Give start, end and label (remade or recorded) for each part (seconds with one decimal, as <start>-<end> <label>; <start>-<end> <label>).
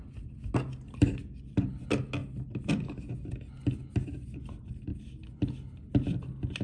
0.0-6.6 recorded